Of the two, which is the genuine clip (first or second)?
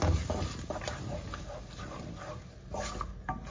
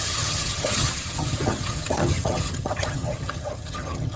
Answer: first